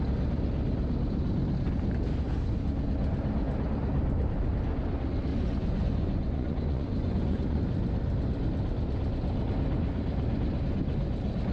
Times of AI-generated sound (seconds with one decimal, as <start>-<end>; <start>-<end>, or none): 5.3-7.6